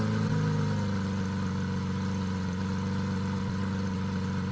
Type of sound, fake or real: real